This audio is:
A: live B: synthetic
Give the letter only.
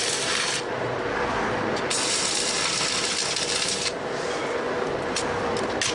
A